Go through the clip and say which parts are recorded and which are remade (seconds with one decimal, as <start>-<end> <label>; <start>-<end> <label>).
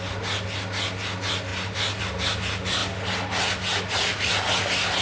0.0-1.5 recorded; 1.5-2.0 remade; 2.0-5.0 recorded